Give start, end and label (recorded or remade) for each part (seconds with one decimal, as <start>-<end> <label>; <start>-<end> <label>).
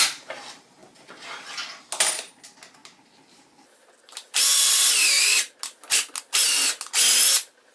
0.0-7.7 recorded